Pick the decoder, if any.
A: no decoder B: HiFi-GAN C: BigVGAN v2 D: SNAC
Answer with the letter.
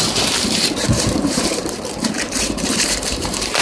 C